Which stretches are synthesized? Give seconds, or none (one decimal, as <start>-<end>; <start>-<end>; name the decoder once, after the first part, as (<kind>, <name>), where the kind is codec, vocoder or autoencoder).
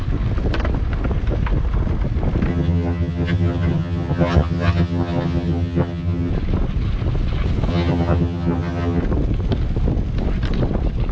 2.5-6.3 (vocoder, HiFi-GAN); 7.7-9.0